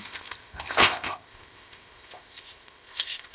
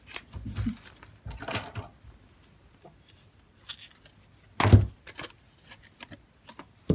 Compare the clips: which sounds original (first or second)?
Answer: second